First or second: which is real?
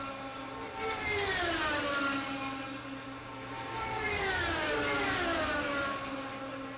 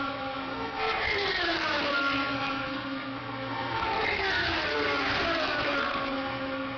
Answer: first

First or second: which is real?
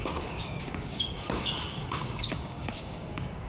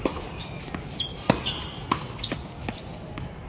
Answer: second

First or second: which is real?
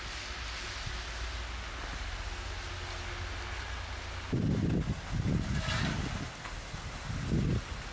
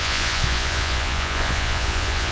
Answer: first